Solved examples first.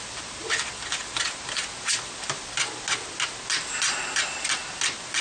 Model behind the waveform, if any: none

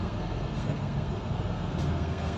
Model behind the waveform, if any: codec, SNAC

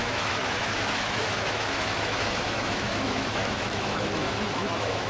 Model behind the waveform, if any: autoencoder, DAC-VAE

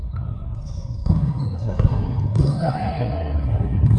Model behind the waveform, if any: codec, SNAC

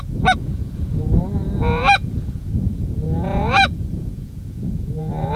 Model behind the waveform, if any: vocoder, Vocos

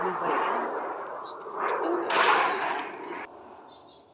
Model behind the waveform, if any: none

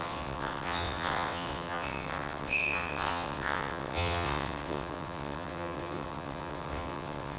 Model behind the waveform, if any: vocoder, WaveNeXt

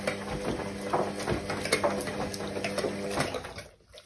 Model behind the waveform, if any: none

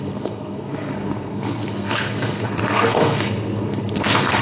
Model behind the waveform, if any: codec, SNAC